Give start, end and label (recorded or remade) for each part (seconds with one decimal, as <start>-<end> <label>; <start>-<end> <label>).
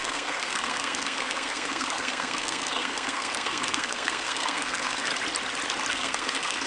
0.0-5.1 remade; 5.1-5.9 recorded; 5.9-6.7 remade